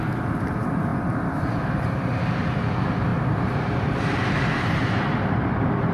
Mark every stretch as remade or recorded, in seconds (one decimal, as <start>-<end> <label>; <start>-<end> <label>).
0.0-3.1 recorded; 3.1-5.0 remade; 5.0-5.9 recorded